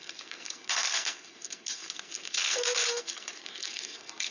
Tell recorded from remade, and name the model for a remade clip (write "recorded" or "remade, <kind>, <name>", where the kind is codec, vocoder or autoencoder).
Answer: remade, codec, SNAC